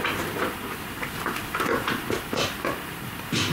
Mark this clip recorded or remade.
recorded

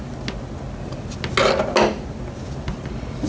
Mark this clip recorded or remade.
recorded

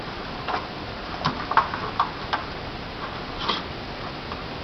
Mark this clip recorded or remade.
recorded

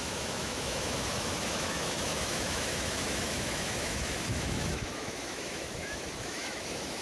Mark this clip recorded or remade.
remade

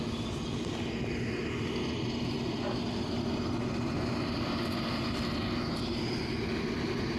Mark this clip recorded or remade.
recorded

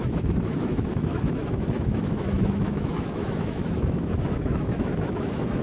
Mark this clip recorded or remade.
remade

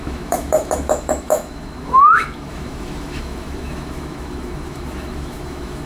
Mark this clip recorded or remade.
remade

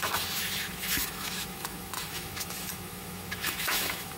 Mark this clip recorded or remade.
remade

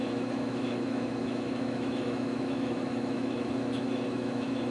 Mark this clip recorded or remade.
remade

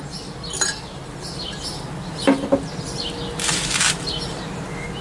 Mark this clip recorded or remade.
recorded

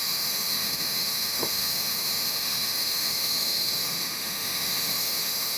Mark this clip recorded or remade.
remade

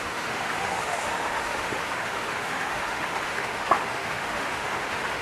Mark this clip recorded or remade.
remade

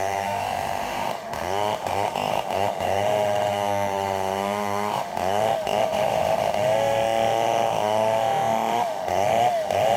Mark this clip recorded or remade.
remade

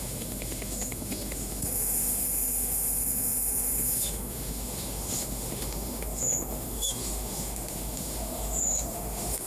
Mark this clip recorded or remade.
remade